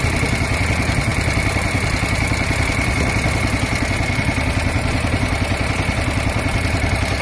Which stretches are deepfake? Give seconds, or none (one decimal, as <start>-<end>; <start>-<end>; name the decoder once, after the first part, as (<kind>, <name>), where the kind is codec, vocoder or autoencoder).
none